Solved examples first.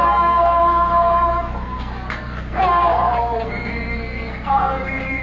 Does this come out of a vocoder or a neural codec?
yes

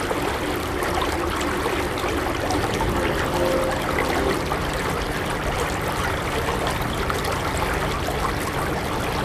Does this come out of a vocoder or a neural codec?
no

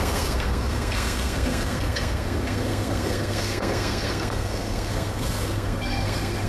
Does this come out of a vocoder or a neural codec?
yes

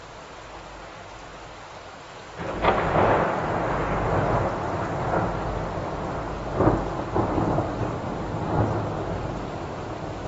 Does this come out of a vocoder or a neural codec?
no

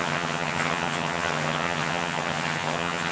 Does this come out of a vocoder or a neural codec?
yes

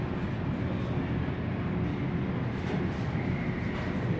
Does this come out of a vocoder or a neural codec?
no